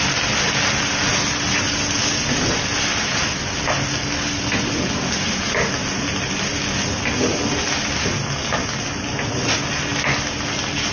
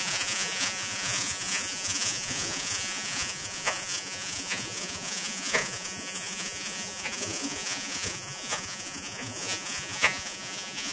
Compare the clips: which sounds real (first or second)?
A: first